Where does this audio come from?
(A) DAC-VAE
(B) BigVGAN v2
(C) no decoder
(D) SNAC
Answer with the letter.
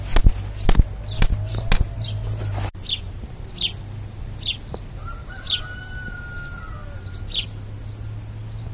C